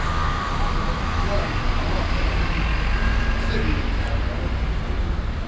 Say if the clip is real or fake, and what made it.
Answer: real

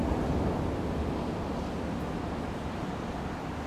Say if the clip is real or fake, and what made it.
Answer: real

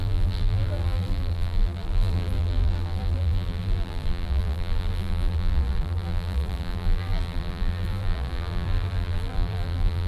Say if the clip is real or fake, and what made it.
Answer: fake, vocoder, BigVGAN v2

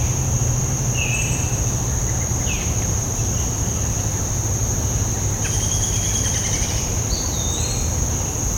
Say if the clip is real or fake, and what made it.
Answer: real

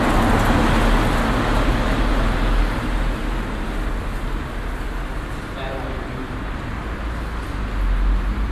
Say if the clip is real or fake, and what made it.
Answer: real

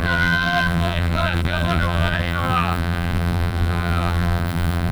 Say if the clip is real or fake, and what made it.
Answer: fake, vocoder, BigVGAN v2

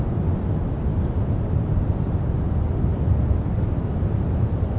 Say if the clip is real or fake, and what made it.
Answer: real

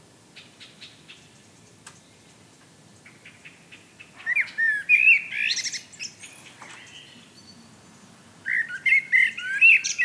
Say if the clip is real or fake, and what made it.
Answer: real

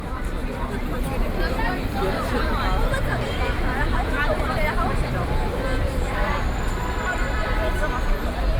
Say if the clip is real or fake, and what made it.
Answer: fake, vocoder, BigVGAN v2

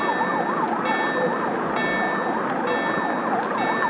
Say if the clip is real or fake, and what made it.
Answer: real